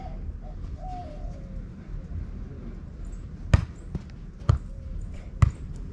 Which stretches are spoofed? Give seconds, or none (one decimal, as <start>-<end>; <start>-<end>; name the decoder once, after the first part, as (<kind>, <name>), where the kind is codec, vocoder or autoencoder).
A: none

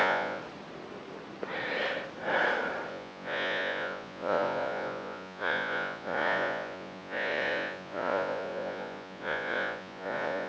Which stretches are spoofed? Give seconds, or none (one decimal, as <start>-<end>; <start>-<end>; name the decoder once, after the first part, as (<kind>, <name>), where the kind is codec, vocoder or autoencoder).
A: 0.0-0.4 (vocoder, Vocos); 2.9-10.5

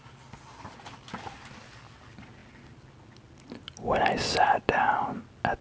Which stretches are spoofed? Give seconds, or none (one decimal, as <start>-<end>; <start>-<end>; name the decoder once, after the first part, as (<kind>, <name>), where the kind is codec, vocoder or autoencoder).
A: none

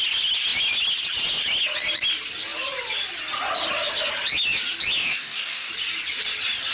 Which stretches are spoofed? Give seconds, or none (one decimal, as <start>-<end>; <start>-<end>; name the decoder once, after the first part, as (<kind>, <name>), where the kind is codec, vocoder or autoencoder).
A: 5.0-5.7 (codec, DAC)

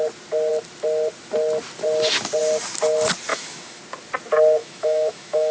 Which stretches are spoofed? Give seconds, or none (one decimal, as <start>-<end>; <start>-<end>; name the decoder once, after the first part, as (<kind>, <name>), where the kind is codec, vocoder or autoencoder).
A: 3.3-3.8 (autoencoder, DAC-VAE); 4.6-5.5

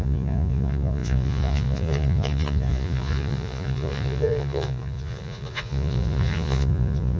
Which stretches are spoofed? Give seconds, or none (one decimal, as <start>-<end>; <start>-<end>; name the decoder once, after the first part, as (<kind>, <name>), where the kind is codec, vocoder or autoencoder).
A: 0.0-7.2 (vocoder, Vocos)

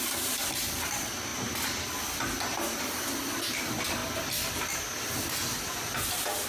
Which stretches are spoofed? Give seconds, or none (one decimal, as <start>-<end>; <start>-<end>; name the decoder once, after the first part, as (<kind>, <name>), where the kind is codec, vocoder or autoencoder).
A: none

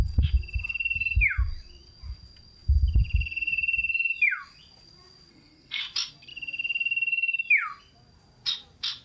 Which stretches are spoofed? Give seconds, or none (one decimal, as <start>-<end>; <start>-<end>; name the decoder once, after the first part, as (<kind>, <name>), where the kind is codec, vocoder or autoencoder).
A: 5.3-5.8 (codec, SNAC)